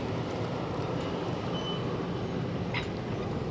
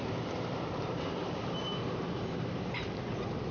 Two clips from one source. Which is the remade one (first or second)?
second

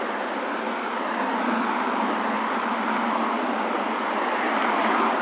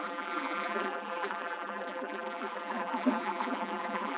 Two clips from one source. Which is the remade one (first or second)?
second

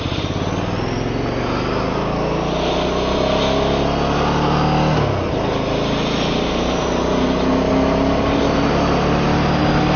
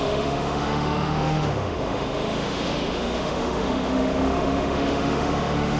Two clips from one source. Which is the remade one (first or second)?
second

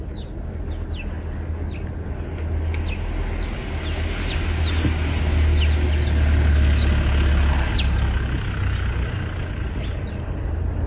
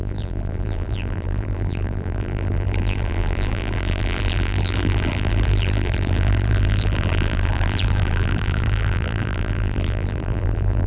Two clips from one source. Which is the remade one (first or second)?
second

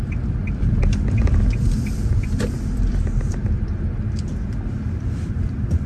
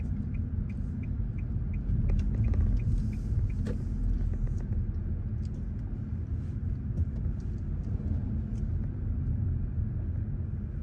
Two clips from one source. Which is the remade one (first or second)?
first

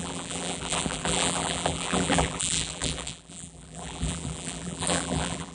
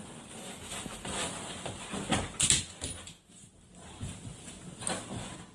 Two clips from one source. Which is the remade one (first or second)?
first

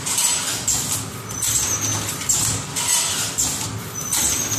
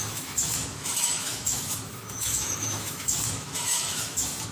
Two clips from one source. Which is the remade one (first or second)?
second